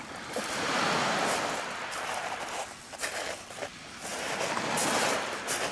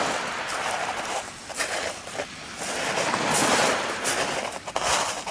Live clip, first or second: first